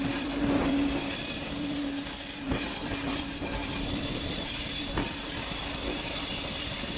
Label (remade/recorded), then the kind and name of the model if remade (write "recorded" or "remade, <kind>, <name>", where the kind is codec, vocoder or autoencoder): remade, vocoder, BigVGAN v2